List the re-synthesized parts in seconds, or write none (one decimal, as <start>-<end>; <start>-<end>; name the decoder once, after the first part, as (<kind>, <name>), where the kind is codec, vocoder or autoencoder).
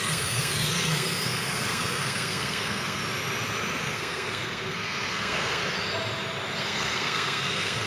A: 0.0-3.0 (codec, SNAC); 3.8-5.6; 6.6-7.9